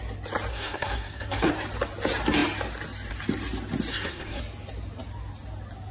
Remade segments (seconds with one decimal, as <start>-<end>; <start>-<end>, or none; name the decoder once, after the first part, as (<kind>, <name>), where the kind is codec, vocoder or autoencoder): 0.5-1.5 (codec, SNAC); 3.9-4.4